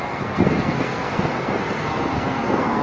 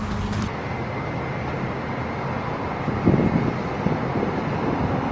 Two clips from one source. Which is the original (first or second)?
second